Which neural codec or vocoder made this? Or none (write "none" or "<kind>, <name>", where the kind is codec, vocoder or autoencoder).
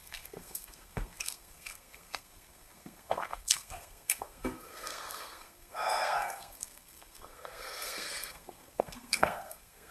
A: codec, SNAC